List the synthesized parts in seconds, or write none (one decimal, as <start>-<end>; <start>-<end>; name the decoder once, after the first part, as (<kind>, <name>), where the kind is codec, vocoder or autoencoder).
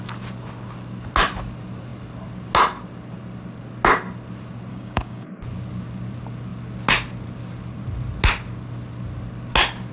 4.7-5.3 (codec, DAC)